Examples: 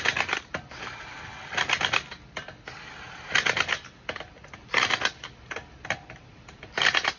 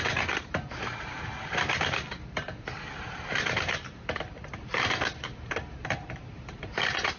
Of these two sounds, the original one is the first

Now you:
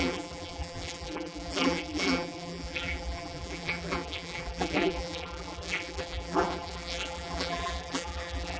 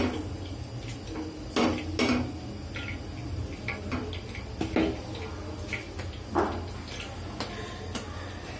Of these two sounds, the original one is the second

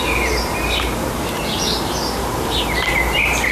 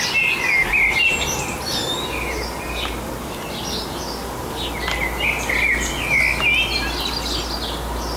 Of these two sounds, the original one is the second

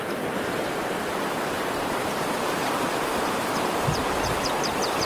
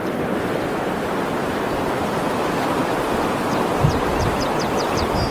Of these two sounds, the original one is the second